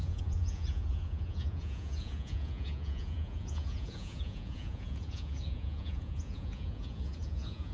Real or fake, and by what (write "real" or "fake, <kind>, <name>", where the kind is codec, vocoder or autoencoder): fake, vocoder, Vocos